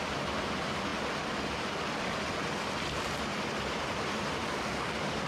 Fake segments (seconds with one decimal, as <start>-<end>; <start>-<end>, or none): 4.4-5.3

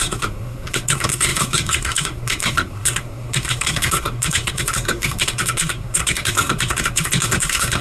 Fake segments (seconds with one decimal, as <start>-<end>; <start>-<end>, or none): 0.0-7.8